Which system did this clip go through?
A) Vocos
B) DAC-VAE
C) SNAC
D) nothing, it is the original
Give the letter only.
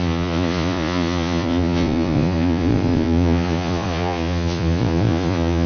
A